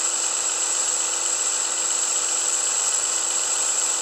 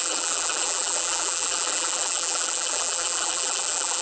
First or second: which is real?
first